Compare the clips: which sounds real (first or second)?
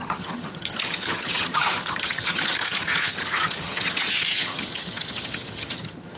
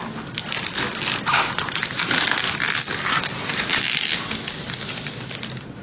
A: second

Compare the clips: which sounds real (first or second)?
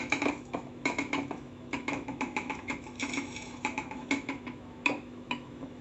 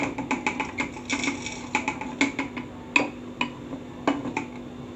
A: second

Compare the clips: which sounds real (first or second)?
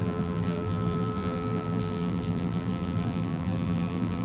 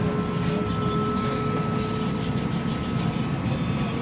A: second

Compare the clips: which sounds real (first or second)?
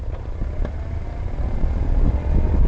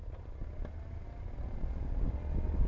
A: second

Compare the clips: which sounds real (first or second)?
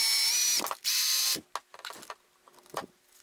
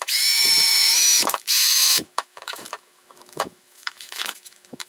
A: first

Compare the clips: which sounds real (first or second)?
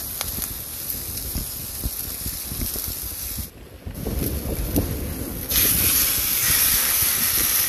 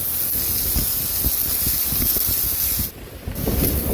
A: second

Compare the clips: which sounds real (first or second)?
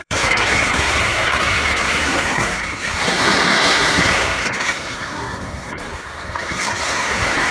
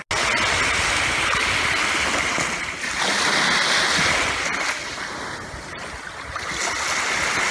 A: second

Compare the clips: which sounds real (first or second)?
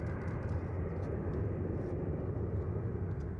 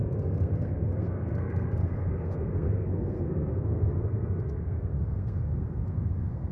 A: first